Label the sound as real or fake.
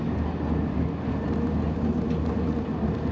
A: real